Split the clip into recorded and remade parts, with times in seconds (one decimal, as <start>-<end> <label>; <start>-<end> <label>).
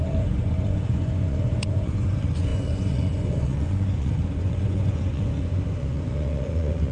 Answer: 0.0-6.9 remade